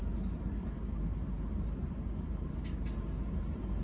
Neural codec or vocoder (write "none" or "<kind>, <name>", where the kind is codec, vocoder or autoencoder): none